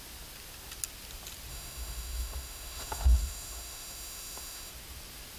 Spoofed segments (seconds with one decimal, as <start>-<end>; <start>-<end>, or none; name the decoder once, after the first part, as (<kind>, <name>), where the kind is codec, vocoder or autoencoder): 1.5-4.7 (autoencoder, DAC-VAE)